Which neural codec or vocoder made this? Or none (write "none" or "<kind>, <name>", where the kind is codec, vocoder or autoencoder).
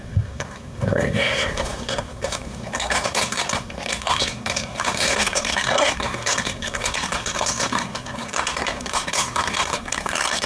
codec, SNAC